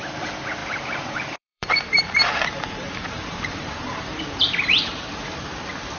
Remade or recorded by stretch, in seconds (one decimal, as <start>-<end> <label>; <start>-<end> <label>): 0.0-0.6 recorded; 0.6-4.2 remade; 4.2-6.0 recorded